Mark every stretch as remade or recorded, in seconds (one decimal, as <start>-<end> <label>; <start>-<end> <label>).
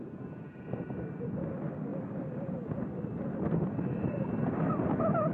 0.0-1.9 recorded; 1.9-3.4 remade; 3.4-5.3 recorded